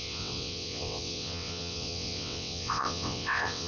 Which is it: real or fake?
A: fake